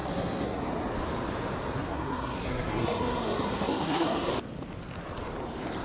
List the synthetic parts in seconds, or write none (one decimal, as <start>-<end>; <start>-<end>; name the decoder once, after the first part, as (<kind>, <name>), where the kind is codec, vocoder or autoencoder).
0.0-0.6 (codec, SNAC); 1.7-4.3